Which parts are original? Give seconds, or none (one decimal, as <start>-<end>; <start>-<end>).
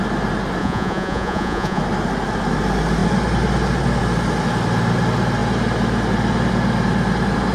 0.0-0.6; 1.8-7.5